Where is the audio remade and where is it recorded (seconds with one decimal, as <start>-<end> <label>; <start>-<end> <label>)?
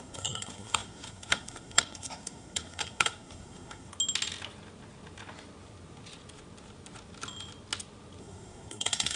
0.0-3.9 remade; 3.9-8.2 recorded; 8.2-9.2 remade